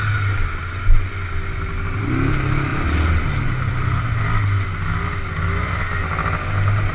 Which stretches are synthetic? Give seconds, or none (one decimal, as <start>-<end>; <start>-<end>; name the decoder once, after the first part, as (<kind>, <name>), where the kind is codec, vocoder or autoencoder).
none